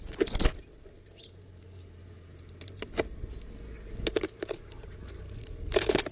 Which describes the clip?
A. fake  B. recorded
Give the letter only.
B